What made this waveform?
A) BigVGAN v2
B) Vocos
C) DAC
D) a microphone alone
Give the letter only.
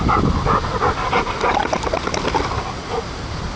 D